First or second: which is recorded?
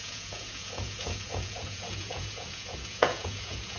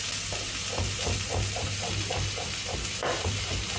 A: second